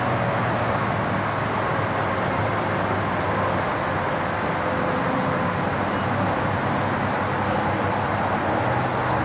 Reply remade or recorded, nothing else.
recorded